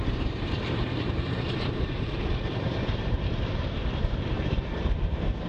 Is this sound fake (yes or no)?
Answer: yes